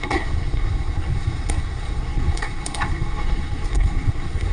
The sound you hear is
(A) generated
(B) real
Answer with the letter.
A